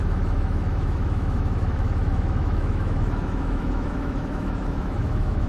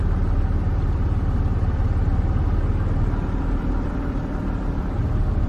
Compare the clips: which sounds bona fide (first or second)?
second